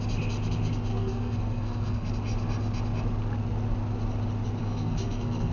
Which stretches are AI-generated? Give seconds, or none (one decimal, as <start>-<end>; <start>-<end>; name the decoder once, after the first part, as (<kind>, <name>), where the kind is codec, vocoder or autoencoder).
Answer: 0.9-2.1 (codec, SNAC); 4.6-5.5